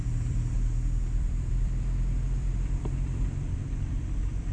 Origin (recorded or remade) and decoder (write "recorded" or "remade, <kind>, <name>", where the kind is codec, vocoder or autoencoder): remade, vocoder, BigVGAN v2